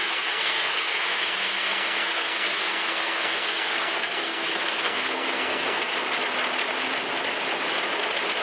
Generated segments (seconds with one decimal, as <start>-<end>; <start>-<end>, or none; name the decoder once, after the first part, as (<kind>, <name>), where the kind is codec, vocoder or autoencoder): 0.0-5.9 (codec, SNAC)